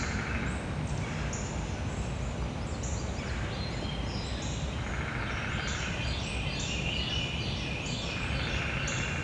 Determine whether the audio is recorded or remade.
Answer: recorded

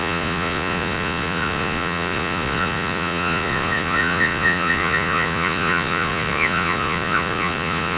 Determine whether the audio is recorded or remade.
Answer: remade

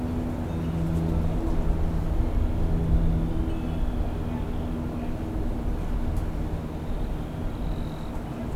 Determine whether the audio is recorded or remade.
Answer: recorded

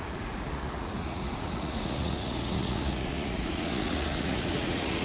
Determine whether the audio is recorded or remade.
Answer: remade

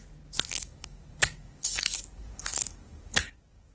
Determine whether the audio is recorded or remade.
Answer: remade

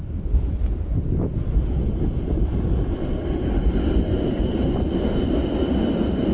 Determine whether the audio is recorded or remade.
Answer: recorded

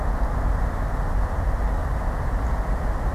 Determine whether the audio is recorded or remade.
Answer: recorded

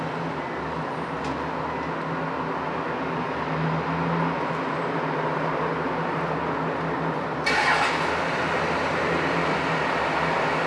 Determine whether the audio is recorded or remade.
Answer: recorded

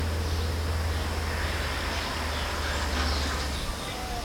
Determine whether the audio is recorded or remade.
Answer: recorded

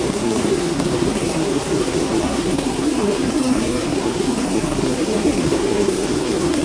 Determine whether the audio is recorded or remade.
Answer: remade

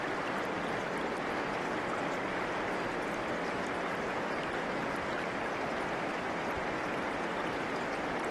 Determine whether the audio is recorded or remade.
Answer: recorded